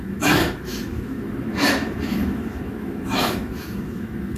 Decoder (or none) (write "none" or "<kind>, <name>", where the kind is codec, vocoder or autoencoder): autoencoder, DAC-VAE